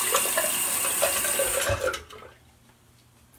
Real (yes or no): yes